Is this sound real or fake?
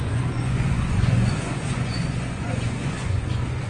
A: fake